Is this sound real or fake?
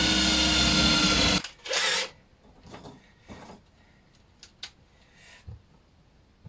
real